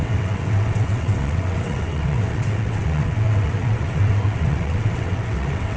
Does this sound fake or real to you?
fake